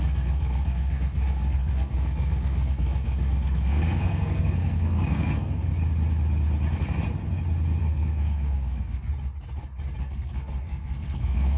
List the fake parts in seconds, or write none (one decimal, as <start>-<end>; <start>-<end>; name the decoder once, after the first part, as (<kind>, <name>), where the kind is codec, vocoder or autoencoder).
0.0-5.7 (codec, SNAC); 7.8-9.1; 10.0-11.6